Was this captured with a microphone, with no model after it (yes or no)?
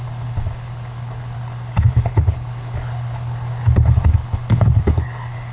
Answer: no